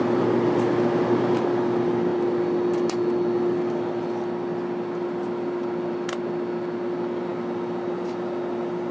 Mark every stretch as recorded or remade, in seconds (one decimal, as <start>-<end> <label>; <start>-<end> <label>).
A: 0.0-8.9 recorded